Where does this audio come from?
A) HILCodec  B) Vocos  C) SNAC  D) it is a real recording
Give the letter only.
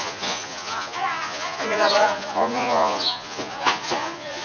B